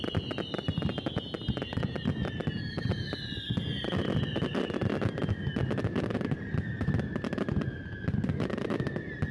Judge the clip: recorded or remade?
recorded